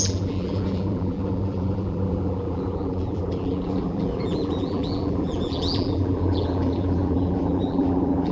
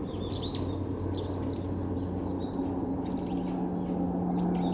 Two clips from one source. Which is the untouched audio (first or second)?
second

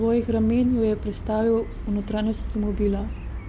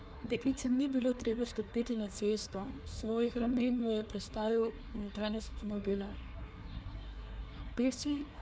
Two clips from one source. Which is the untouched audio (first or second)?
first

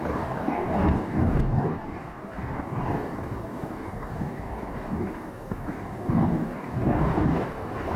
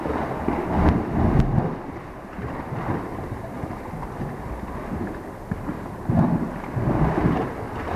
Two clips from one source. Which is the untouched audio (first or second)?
second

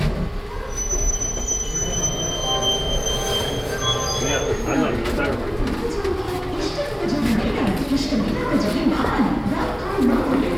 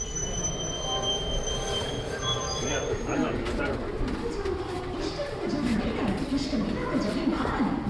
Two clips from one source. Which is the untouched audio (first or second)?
first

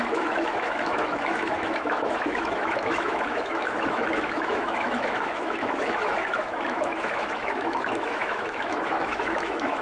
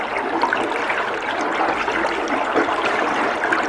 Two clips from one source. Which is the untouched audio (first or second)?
second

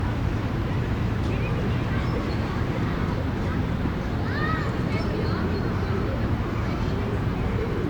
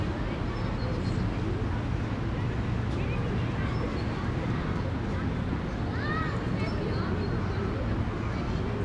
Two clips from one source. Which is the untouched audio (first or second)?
second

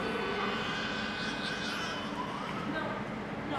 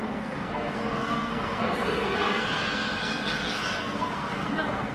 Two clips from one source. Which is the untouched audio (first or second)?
first